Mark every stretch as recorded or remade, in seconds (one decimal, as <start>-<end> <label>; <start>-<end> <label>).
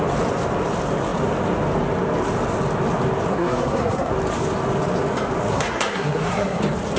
0.0-3.3 recorded; 3.3-4.1 remade; 4.1-5.5 recorded; 5.5-6.6 remade; 6.6-7.0 recorded